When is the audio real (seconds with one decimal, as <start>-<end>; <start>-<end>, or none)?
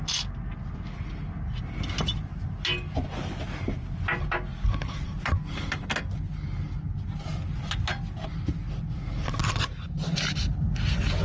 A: 0.0-11.2